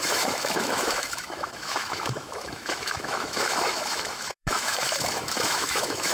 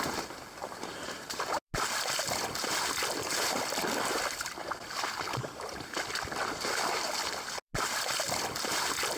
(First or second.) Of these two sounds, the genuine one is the second